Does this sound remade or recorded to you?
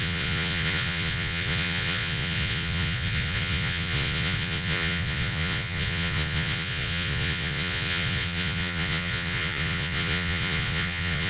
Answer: remade